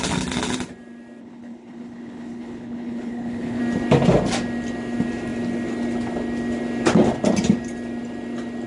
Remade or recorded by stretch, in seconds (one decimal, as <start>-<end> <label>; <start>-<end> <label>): 0.0-1.2 recorded; 1.2-3.6 remade; 3.6-8.7 recorded